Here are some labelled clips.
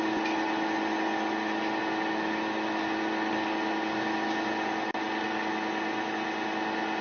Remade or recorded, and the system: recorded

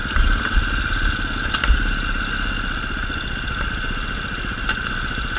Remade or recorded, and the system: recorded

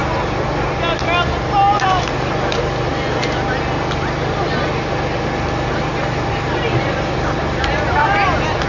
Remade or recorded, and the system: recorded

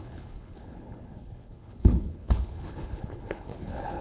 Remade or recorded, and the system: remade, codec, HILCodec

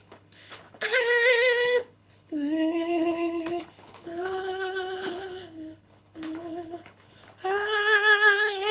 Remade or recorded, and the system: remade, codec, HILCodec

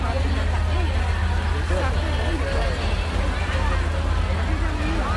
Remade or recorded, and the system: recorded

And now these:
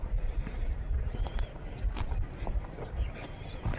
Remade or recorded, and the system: recorded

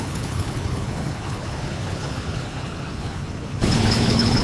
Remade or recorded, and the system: remade, codec, HILCodec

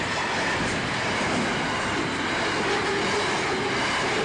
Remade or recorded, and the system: recorded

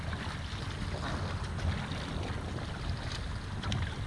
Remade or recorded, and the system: recorded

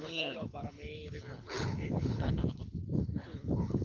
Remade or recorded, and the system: remade, codec, HILCodec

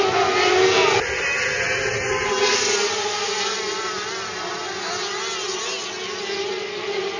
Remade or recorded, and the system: recorded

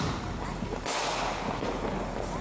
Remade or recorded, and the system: recorded